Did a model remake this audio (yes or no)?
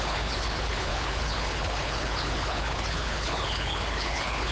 yes